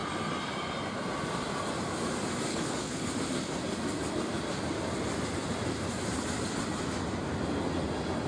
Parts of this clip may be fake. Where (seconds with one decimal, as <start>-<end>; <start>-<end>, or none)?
2.5-3.1